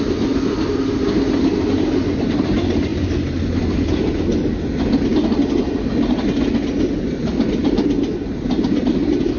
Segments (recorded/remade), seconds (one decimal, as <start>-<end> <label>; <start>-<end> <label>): 0.0-9.4 recorded